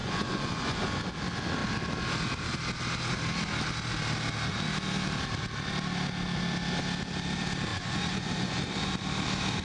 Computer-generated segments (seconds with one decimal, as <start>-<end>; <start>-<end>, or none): 0.0-1.1; 7.7-8.9